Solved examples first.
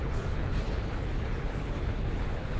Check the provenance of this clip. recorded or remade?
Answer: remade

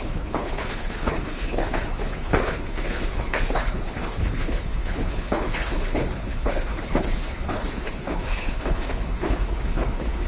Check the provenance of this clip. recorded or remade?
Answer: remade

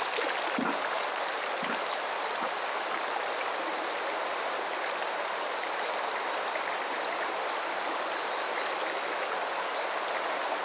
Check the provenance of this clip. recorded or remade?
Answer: recorded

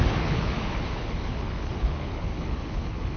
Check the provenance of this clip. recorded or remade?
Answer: remade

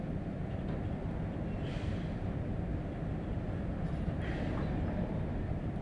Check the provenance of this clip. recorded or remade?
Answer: recorded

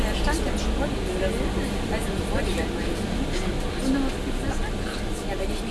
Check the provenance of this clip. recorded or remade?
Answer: recorded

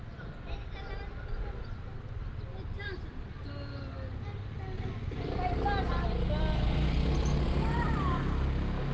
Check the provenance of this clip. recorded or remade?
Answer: recorded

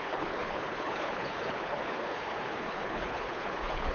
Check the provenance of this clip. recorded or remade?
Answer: remade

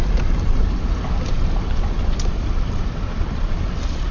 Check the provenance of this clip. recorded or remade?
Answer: recorded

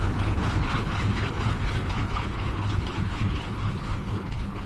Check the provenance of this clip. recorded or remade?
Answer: remade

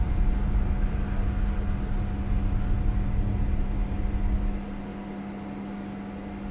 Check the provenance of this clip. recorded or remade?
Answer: recorded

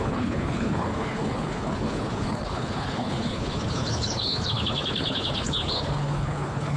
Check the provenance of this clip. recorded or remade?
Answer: remade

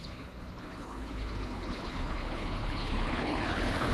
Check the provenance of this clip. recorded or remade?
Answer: remade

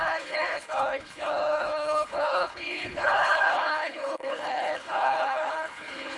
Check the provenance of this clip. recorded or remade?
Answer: remade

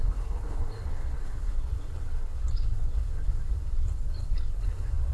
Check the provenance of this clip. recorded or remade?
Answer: remade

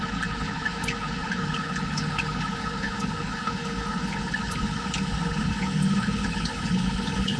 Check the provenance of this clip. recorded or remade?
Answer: remade